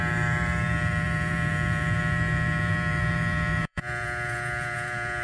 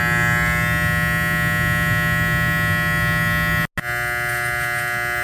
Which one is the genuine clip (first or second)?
second